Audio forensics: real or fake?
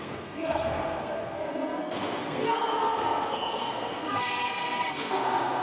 fake